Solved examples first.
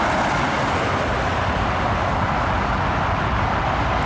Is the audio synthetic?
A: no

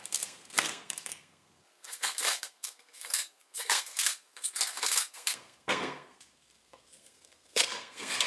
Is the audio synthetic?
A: yes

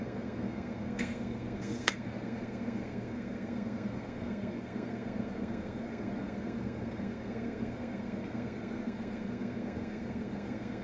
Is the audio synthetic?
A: yes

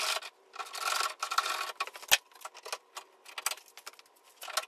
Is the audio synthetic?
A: no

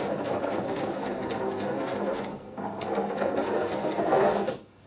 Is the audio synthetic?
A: yes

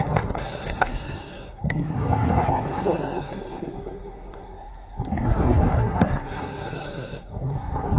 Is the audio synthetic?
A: yes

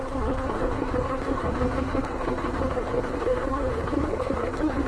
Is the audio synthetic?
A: yes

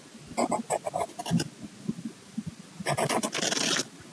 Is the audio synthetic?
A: no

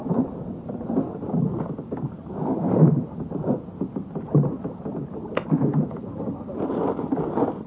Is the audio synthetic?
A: no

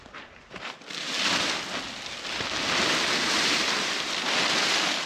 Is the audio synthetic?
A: no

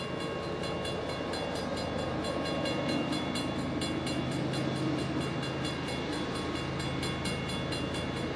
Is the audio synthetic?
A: no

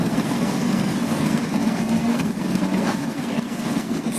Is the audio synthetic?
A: yes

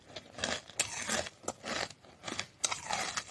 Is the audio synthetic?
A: no